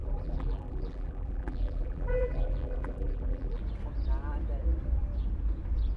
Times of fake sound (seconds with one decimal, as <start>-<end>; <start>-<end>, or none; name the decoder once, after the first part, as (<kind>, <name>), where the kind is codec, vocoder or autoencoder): 0.0-3.6 (vocoder, BigVGAN v2)